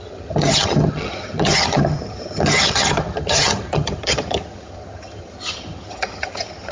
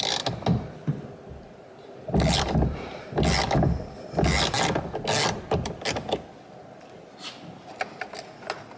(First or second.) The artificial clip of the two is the first